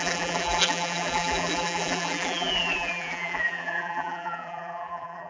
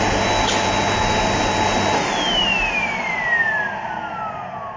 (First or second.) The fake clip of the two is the first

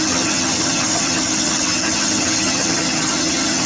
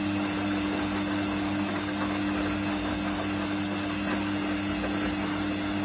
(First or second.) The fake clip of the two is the first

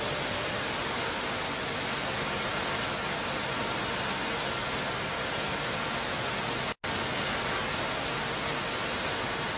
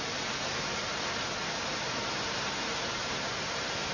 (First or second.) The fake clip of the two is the second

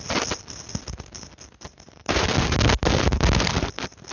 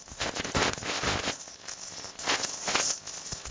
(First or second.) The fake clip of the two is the second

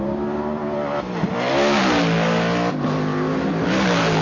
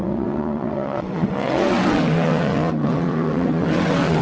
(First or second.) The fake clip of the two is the second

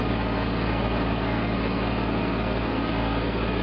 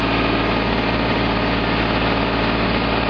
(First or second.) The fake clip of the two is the first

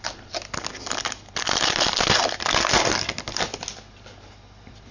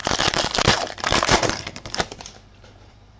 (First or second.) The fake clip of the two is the second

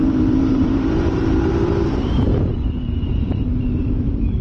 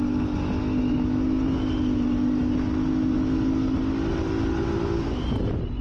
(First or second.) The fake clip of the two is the first